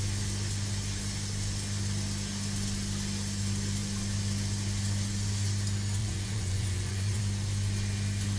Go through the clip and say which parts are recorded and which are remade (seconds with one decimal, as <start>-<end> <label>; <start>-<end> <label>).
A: 0.0-6.0 recorded; 6.0-7.2 remade; 7.2-8.4 recorded